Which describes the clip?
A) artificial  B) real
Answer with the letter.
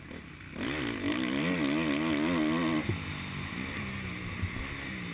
B